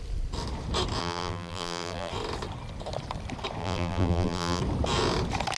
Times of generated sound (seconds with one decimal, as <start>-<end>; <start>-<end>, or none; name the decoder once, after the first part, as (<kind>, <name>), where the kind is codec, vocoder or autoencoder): 1.0-2.1 (vocoder, BigVGAN v2); 3.6-4.6